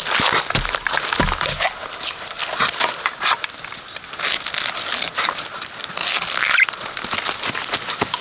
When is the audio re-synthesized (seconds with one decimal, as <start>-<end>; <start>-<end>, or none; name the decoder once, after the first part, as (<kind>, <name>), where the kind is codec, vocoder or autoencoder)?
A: none